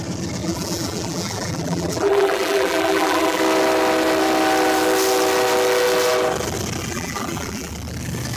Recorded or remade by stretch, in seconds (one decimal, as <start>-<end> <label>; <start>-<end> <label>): 0.0-0.4 recorded; 0.4-3.4 remade; 3.4-6.9 recorded; 6.9-7.7 remade; 7.7-8.4 recorded